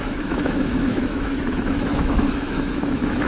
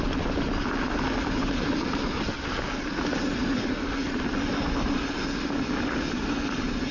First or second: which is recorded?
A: second